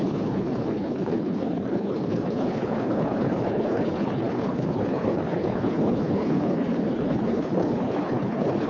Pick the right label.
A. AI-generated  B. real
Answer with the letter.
A